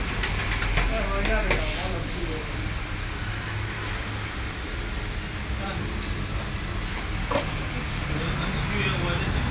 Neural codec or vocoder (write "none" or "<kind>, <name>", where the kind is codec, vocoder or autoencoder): none